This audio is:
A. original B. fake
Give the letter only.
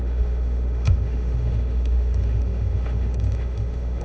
B